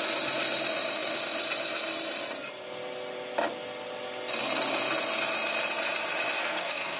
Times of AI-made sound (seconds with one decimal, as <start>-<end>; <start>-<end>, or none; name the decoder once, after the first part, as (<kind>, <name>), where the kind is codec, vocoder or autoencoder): 6.4-7.0 (codec, SNAC)